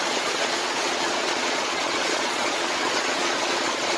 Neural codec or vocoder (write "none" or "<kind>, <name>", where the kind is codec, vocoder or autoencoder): vocoder, Vocos